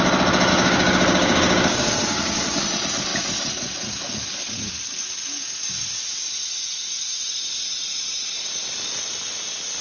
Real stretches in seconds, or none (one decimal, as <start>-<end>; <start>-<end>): 0.0-0.5; 2.6-9.8